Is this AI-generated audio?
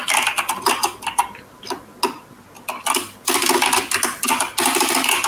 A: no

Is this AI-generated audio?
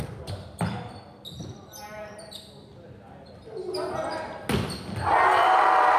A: no